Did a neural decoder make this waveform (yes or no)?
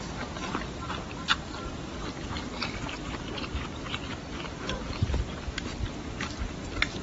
no